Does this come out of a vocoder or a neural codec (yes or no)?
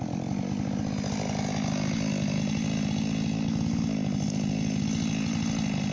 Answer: no